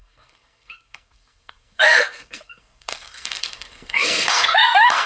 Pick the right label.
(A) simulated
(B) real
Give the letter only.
A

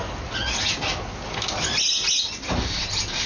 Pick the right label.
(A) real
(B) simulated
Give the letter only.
A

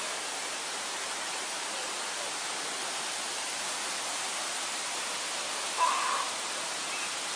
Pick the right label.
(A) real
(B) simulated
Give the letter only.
A